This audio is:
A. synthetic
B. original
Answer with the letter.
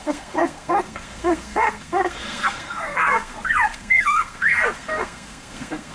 A